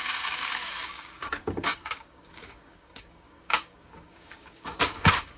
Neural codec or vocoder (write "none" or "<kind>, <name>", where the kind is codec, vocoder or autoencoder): codec, DAC